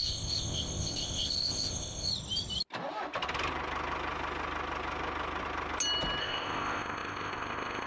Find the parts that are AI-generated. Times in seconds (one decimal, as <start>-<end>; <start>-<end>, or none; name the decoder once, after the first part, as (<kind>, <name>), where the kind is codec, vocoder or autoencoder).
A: 0.0-2.1 (codec, ZipCodec); 6.2-7.9